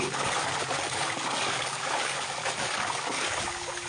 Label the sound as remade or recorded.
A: remade